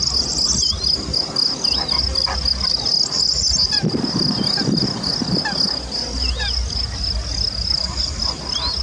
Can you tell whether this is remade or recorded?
recorded